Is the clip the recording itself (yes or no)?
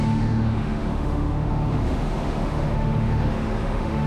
no